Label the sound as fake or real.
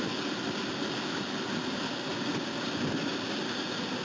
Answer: real